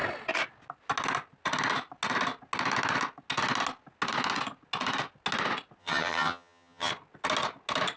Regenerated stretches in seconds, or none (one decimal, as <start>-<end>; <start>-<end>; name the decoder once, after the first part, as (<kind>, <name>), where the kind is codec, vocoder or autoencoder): 5.8-6.9 (vocoder, HiFi-GAN)